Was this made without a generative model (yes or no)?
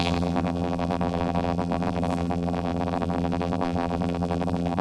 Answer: no